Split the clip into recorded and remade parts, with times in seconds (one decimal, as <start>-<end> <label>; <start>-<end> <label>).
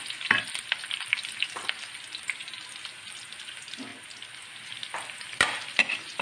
0.0-6.2 recorded